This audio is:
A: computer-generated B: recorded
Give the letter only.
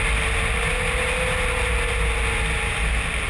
B